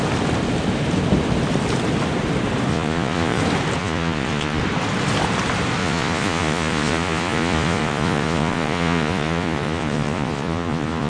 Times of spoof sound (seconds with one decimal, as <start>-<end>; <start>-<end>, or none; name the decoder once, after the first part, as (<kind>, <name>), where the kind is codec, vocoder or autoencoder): 2.7-3.4 (vocoder, Vocos); 3.8-4.6; 5.8-11.1